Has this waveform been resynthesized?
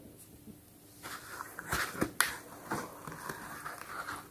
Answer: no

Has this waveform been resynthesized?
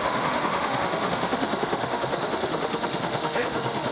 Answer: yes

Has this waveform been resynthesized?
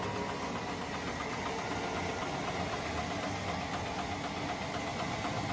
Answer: no